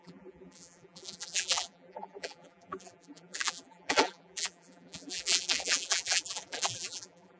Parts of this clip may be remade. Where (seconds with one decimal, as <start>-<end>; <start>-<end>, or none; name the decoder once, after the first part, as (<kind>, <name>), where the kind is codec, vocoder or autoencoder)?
0.0-7.4 (vocoder, BigVGAN v2)